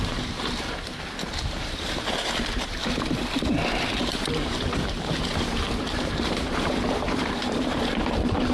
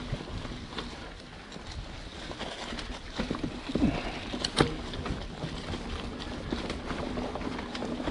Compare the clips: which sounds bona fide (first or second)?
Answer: second